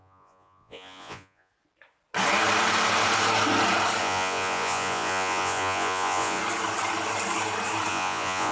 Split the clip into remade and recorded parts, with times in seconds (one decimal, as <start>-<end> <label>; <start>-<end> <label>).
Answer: 0.0-1.5 remade; 1.5-4.0 recorded; 4.0-6.4 remade; 6.4-7.9 recorded; 7.9-8.5 remade